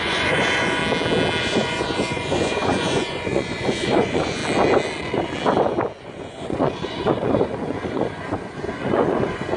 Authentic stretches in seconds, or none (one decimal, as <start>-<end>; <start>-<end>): 0.8-1.4; 4.4-6.0